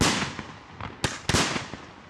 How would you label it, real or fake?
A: real